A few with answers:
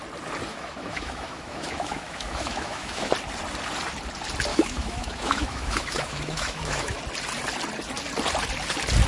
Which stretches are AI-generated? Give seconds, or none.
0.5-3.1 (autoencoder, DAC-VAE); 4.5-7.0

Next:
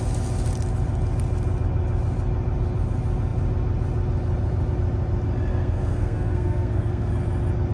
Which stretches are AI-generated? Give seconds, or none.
5.5-7.1 (codec, SNAC)

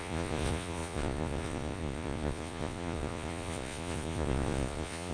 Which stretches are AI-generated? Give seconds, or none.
0.0-5.1 (vocoder, Vocos)

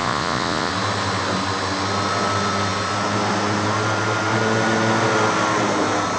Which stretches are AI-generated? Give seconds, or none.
0.0-0.7 (vocoder, Vocos)

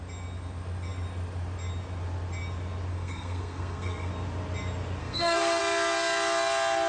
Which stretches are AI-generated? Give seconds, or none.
2.9-4.1 (codec, SNAC); 5.0-5.6